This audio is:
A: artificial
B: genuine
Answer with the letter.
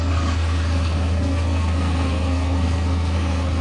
A